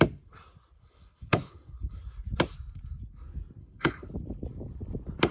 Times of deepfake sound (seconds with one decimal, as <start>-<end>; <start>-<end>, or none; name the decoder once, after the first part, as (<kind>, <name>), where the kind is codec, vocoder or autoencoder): 0.8-2.0 (codec, HILCodec); 3.6-4.1